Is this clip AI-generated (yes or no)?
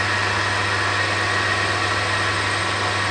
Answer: no